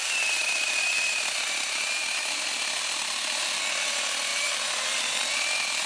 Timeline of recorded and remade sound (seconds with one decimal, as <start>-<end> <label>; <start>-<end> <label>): 0.0-5.9 recorded